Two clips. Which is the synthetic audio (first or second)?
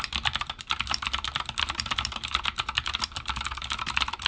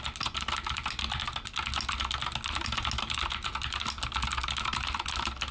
first